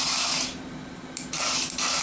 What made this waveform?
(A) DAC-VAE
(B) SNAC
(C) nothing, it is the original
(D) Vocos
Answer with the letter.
C